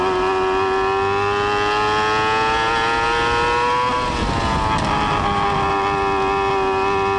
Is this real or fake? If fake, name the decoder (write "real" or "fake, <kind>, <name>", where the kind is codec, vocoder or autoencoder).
real